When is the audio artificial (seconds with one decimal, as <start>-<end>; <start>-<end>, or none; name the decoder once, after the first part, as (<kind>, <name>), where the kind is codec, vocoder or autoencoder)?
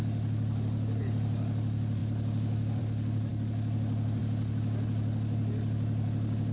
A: none